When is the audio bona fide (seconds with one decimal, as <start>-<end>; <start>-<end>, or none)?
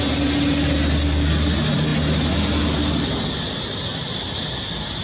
0.0-5.0